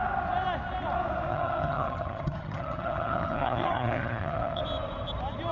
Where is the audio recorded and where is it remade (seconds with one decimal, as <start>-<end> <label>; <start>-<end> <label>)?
0.0-1.3 recorded; 1.3-4.6 remade; 4.6-5.5 recorded